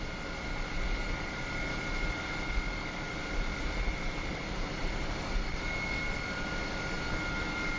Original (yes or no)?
yes